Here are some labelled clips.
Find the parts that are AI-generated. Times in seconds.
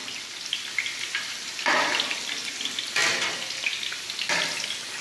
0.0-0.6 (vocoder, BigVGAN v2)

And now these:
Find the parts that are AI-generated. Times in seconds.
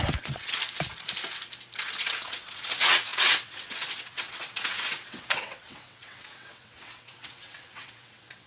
0.0-0.6 (vocoder, WaveNeXt); 1.8-8.5